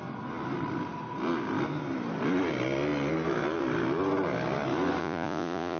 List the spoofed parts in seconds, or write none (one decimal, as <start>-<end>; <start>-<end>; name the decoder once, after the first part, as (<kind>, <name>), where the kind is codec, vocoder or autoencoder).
5.0-5.8 (vocoder, Vocos)